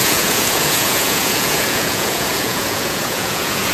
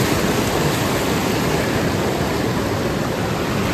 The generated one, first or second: first